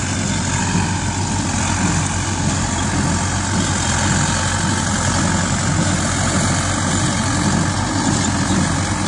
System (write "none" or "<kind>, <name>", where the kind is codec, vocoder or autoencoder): none